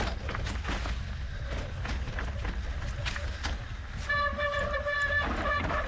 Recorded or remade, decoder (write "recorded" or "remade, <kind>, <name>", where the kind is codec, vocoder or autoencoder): recorded